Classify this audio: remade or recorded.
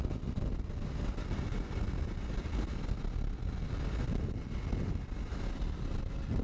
recorded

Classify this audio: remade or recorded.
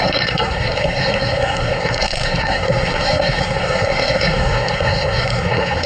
remade